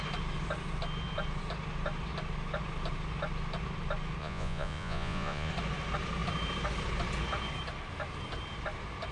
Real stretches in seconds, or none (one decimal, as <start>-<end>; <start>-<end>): 0.0-4.2; 5.5-9.1